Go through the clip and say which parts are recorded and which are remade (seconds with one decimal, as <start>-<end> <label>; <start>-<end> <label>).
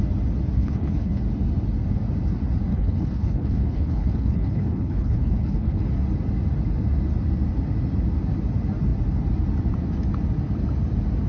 0.0-0.6 recorded; 0.6-1.2 remade; 1.2-2.7 recorded; 2.7-5.8 remade; 5.8-11.3 recorded